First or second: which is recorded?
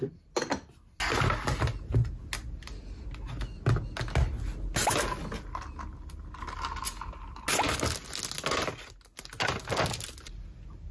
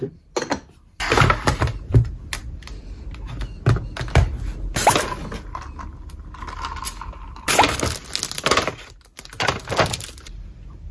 first